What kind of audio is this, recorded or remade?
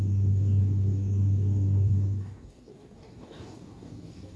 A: remade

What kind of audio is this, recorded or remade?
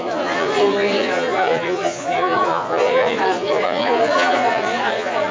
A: remade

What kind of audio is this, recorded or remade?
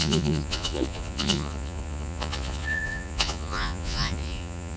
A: remade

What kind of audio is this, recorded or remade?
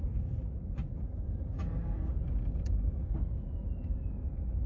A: recorded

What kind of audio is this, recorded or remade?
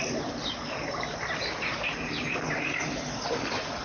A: recorded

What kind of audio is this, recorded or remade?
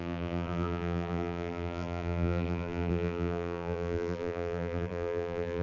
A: remade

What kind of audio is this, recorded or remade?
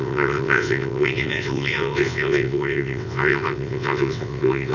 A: remade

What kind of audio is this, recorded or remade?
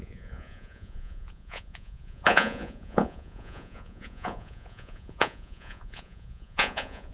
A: remade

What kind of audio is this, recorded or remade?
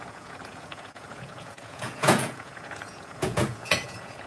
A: remade